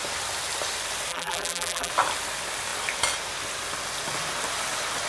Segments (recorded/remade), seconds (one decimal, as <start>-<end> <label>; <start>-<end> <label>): 0.0-1.1 recorded; 1.1-1.9 remade; 1.9-5.1 recorded